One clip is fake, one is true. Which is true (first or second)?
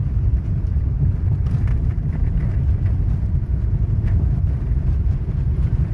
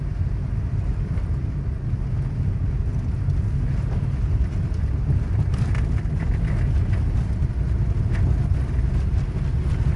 second